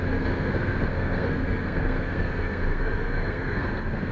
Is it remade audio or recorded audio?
remade